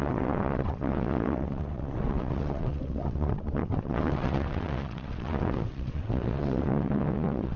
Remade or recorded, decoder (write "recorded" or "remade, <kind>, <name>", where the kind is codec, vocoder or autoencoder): remade, vocoder, WaveNeXt